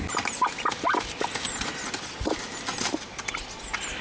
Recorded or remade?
recorded